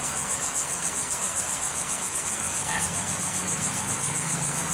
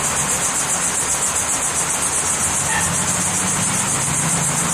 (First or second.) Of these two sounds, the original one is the second